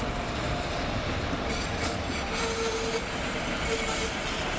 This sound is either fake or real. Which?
real